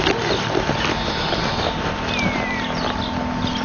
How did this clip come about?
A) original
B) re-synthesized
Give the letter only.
A